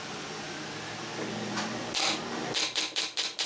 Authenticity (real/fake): fake